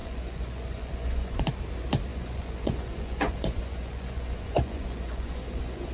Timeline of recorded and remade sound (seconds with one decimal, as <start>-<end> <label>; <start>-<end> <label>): 0.0-1.5 remade; 1.5-2.1 recorded; 2.1-5.9 remade